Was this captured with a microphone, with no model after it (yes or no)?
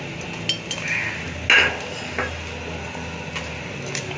yes